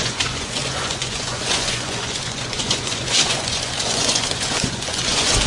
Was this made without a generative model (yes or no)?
no